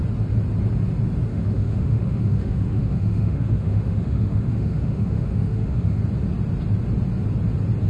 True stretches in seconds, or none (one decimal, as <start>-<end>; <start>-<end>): 0.0-1.3; 6.0-7.9